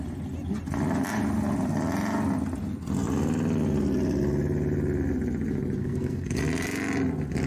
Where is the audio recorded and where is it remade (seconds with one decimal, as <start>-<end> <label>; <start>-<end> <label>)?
0.0-5.8 recorded; 5.8-6.4 remade; 6.4-7.5 recorded